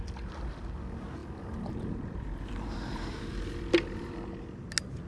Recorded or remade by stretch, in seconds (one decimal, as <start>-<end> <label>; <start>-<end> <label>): 0.0-1.2 recorded; 1.2-4.3 remade; 4.3-5.1 recorded